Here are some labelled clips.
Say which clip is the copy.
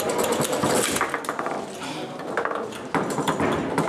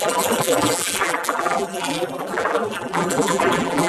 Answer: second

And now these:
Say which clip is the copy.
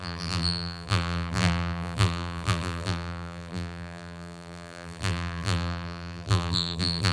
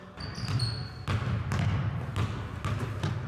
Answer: first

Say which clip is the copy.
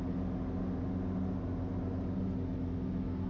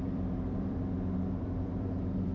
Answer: second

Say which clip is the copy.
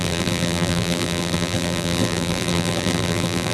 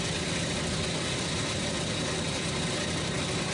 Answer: first